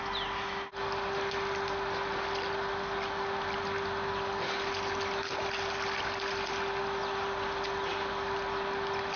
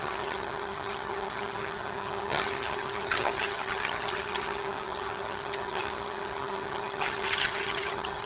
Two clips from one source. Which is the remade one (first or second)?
second